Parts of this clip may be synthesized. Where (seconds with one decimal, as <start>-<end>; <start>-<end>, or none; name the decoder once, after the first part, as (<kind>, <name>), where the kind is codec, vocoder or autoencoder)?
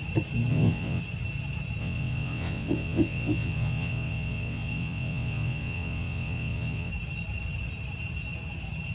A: 0.5-1.0 (vocoder, WaveNeXt); 1.8-6.9